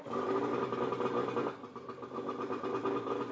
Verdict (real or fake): real